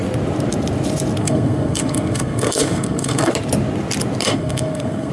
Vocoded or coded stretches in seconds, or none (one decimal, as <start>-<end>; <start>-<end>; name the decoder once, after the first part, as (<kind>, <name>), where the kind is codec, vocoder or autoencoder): 1.2-3.3 (codec, SNAC); 4.2-5.1